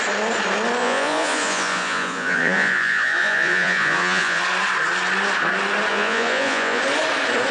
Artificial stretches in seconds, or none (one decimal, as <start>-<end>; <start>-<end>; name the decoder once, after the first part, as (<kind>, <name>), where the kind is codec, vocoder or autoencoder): 0.8-4.4 (vocoder, Vocos); 5.9-6.8